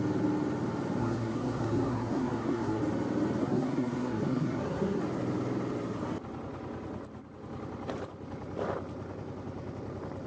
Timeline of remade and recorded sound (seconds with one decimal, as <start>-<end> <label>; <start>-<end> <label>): 0.0-1.0 recorded; 1.0-2.8 remade; 2.8-3.4 recorded; 3.4-5.0 remade; 5.0-10.3 recorded